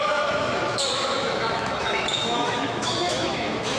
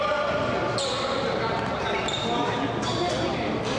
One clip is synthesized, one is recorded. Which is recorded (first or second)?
second